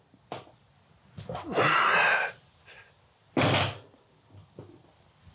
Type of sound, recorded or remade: recorded